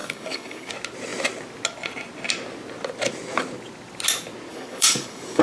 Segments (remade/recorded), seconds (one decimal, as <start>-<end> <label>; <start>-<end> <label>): 0.0-0.7 remade; 0.7-4.5 recorded; 4.5-5.4 remade